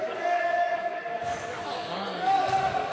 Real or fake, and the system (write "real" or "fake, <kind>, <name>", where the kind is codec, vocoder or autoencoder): fake, codec, DAC